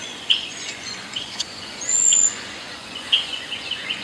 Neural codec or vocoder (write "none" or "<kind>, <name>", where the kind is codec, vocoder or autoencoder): vocoder, Vocos